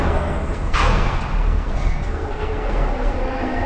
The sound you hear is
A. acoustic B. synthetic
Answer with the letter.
B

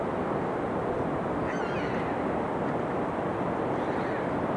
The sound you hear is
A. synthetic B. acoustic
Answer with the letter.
B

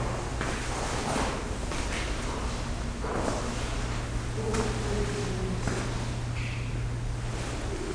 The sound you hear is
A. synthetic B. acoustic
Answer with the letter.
B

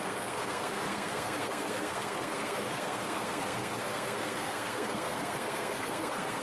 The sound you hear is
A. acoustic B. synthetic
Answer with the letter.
B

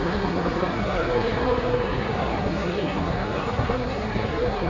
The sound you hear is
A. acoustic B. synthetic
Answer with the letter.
B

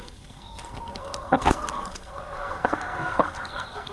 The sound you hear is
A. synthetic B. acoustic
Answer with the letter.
A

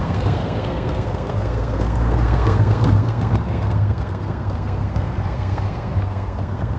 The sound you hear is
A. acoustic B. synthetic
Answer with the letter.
B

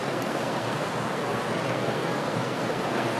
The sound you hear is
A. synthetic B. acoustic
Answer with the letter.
A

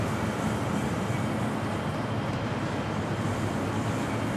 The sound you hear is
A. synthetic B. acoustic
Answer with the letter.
B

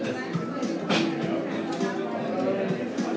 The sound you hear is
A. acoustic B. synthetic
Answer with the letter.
A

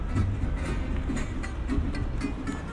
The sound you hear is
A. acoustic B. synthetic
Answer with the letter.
A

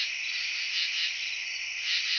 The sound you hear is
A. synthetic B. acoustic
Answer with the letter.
B